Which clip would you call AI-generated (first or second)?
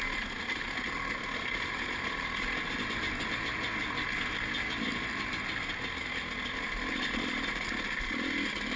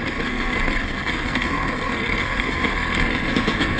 second